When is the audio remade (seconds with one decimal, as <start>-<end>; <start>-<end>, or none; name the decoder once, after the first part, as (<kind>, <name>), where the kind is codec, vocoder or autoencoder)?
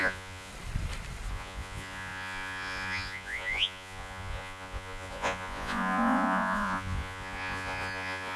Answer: 0.0-0.5 (vocoder, Vocos); 1.3-8.4